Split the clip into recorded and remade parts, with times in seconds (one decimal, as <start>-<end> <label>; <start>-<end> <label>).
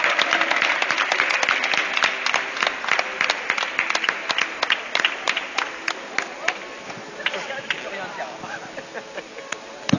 0.0-10.0 recorded